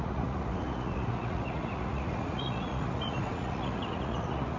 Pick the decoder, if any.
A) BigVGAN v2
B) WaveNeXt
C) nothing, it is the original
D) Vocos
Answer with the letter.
D